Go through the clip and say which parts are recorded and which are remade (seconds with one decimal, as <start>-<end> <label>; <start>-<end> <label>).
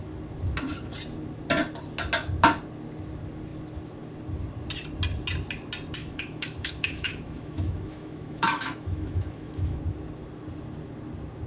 0.0-6.0 recorded; 6.0-9.8 remade; 9.8-11.5 recorded